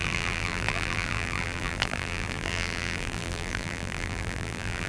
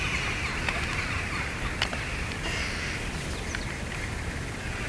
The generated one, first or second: first